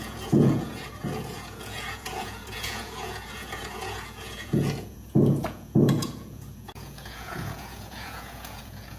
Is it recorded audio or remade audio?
remade